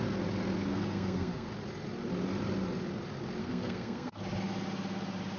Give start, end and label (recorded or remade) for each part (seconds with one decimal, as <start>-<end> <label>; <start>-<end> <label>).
0.0-0.7 recorded; 0.7-1.5 remade; 1.5-3.4 recorded; 3.4-4.2 remade; 4.2-5.4 recorded